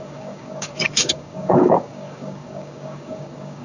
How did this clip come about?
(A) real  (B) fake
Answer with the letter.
B